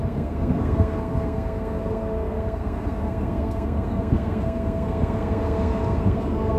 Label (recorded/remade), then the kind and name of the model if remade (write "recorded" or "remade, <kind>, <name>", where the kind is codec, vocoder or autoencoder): remade, codec, SNAC